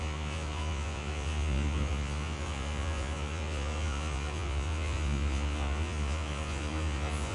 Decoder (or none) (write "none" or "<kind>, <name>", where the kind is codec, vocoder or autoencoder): vocoder, Vocos